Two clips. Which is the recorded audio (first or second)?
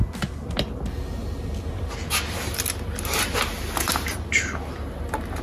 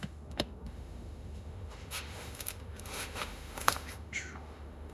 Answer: first